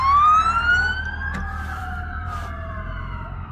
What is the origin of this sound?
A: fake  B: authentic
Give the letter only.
A